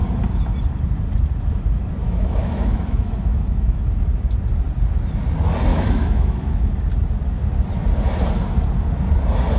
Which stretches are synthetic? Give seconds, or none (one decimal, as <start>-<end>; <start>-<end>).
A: 2.0-3.8; 5.7-6.7